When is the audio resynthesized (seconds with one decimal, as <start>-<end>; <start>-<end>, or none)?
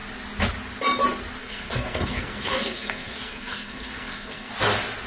1.4-4.5